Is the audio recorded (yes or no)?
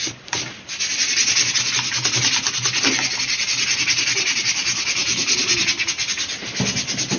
yes